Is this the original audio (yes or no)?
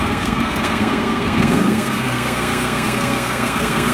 no